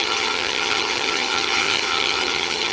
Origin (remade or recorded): remade